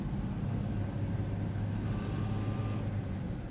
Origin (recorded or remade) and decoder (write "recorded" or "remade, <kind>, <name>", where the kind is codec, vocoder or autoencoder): recorded